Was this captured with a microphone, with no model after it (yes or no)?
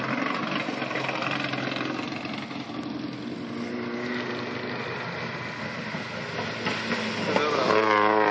yes